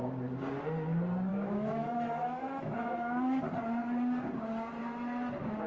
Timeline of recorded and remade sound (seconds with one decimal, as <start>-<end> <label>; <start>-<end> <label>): 0.0-1.3 recorded; 1.3-3.4 remade; 3.4-5.7 recorded